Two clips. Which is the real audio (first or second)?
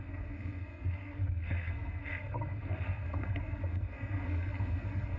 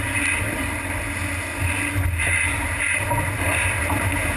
second